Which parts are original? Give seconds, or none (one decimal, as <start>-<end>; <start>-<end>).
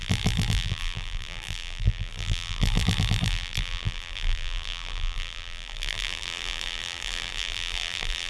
none